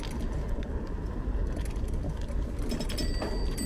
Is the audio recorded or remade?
recorded